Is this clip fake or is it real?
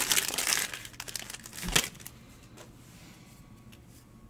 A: real